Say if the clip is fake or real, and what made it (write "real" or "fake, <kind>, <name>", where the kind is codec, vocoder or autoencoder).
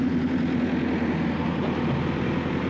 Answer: real